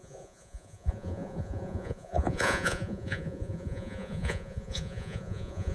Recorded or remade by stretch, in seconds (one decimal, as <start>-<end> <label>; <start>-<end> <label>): 0.0-5.7 remade